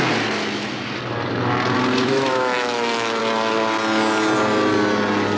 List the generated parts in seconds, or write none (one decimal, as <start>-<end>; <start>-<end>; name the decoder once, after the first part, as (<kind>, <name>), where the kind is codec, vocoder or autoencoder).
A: 2.0-3.2 (autoencoder, DAC-VAE)